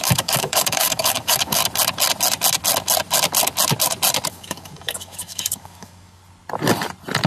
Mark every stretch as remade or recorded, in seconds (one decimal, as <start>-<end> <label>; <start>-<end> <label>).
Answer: 0.0-1.6 remade; 1.6-4.3 recorded; 4.3-6.2 remade; 6.2-7.3 recorded